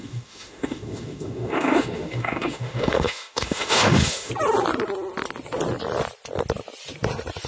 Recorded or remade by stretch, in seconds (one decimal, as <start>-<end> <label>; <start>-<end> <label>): 0.0-4.3 remade; 4.3-7.5 recorded